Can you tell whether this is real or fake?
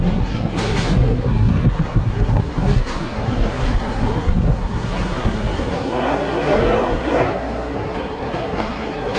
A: fake